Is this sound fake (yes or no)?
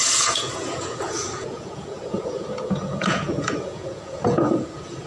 yes